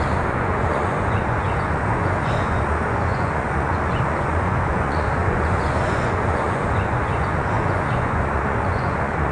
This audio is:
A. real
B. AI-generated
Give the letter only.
B